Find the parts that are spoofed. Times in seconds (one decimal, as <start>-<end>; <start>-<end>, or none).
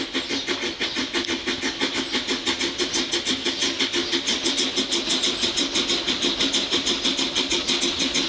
none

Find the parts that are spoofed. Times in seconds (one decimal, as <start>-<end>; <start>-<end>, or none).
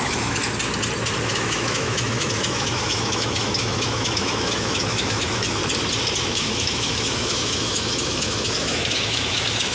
0.0-0.4; 1.3-5.6; 6.2-9.7